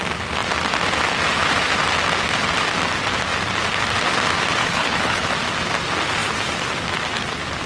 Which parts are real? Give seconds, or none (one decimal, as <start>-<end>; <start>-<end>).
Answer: 0.0-4.6; 5.3-7.7